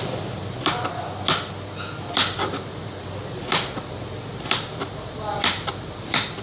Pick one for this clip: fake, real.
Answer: real